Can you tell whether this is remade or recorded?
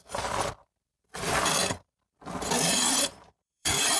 remade